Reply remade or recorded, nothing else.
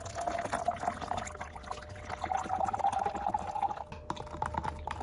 recorded